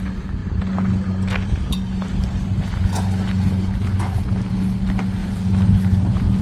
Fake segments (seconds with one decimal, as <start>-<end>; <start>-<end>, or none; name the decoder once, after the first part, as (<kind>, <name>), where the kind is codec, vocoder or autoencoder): 5.2-6.4 (vocoder, BigVGAN v2)